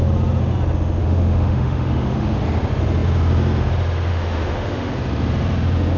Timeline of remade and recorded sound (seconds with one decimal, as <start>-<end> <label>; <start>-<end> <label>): 0.0-1.0 recorded; 1.0-2.4 remade; 2.4-4.1 recorded; 4.1-4.9 remade; 4.9-6.0 recorded